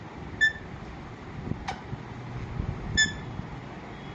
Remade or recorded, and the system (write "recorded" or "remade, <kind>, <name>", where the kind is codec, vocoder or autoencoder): recorded